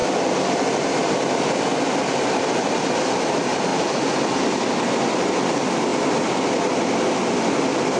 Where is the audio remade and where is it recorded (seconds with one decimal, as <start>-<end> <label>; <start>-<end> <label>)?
0.0-8.0 recorded